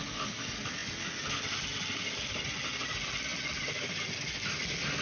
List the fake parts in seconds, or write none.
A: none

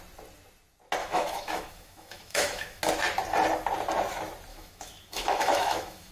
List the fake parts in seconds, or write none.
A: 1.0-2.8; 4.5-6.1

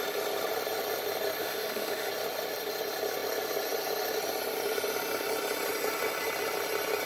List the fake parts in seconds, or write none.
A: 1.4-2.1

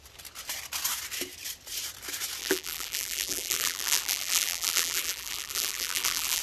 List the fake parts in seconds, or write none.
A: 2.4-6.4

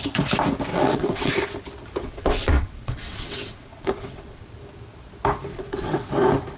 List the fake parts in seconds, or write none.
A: 0.7-1.3; 2.0-4.4; 5.5-6.1

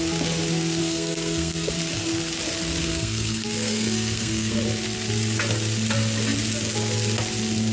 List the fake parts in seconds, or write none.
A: 0.8-1.7; 2.8-4.6

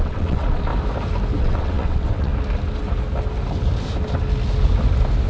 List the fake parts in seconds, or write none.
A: 0.0-0.7; 1.4-2.3